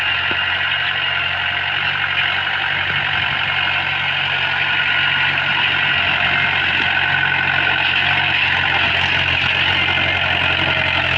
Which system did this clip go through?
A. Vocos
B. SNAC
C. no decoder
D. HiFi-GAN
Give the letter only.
C